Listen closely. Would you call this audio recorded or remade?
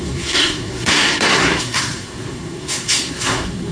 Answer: remade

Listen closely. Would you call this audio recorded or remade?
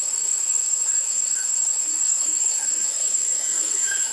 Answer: remade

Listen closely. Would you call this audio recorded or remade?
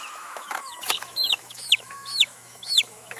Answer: remade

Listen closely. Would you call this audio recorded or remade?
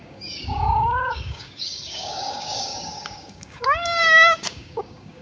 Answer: remade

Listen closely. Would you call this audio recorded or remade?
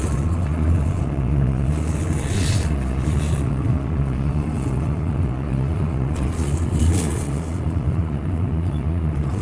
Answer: remade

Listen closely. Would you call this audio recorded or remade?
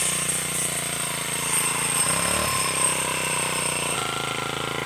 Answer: recorded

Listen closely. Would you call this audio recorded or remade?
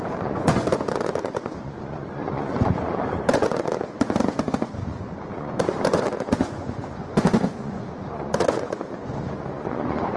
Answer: remade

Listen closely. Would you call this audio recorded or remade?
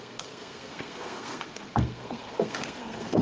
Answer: remade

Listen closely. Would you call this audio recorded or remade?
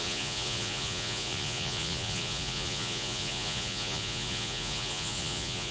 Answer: remade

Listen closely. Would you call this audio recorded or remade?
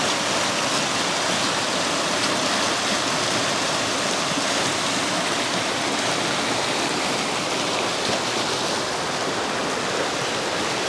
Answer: recorded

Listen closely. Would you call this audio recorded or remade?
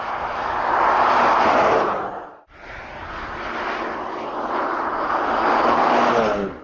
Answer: recorded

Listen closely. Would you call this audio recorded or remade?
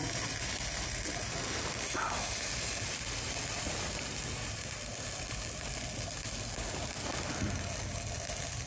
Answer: recorded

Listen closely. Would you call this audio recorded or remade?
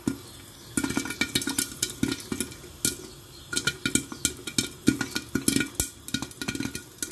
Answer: recorded